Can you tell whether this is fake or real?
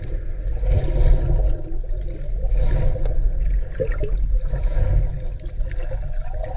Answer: real